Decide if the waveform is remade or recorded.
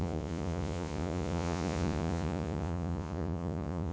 remade